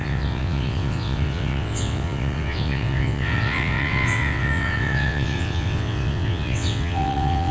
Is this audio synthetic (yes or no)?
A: yes